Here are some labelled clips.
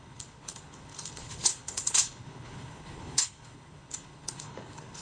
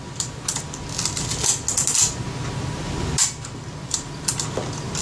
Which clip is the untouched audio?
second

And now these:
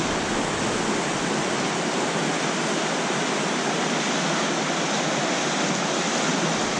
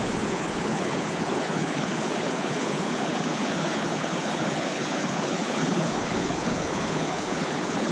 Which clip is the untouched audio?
first